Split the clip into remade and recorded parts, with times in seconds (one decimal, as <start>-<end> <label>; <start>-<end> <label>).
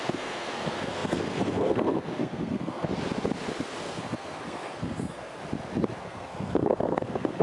0.0-2.9 remade; 2.9-3.8 recorded; 3.8-5.4 remade; 5.4-6.0 recorded; 6.0-7.4 remade